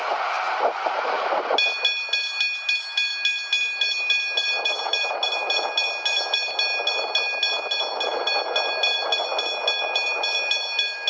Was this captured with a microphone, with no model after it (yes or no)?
yes